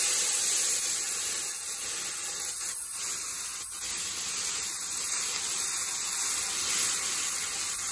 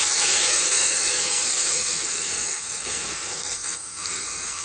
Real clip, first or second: first